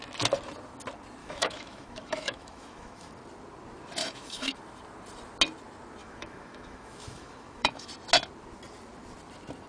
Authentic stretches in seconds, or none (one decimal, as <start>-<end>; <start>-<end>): 0.0-1.2; 3.1-4.0; 4.6-6.0; 7.9-9.7